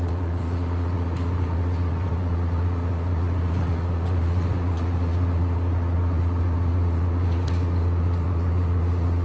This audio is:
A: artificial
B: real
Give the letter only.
A